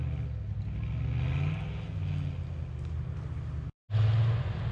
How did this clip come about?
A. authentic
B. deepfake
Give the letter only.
A